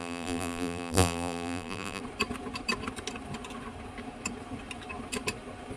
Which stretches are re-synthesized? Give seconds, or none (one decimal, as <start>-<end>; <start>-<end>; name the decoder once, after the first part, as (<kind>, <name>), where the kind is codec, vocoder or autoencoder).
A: 0.0-2.0 (vocoder, BigVGAN v2)